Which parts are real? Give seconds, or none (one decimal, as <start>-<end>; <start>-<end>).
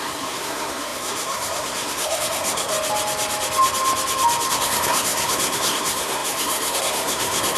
2.7-4.5